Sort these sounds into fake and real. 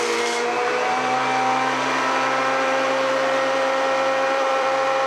fake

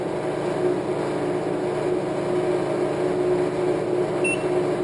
real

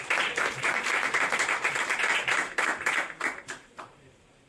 fake